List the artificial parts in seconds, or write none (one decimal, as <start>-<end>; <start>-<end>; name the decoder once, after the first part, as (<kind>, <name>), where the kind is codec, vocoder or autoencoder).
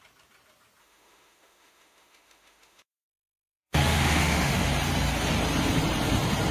0.8-4.7 (autoencoder, DAC-VAE)